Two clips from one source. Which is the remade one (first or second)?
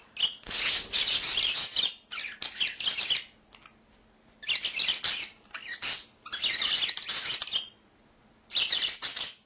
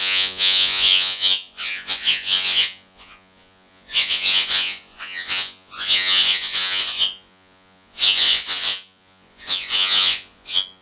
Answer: second